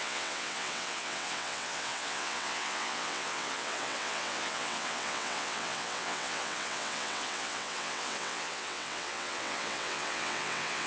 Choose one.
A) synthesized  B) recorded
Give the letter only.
A